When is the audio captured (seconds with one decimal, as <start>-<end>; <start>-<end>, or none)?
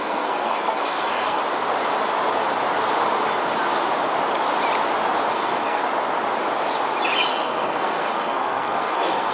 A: 1.4-5.3; 5.8-7.3